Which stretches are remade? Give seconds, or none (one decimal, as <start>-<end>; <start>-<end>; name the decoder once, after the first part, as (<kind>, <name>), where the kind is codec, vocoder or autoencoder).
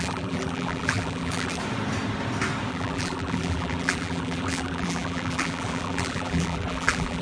0.0-1.6 (vocoder, BigVGAN v2); 2.7-7.2